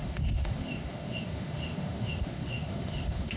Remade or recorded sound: remade